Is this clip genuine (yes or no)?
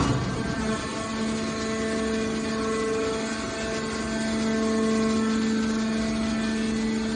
yes